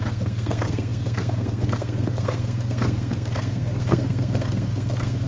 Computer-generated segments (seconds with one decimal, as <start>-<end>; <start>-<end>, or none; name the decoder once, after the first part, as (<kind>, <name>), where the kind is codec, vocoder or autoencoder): 0.0-5.3 (codec, SNAC)